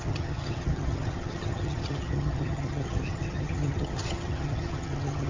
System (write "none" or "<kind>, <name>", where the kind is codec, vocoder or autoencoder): vocoder, HiFi-GAN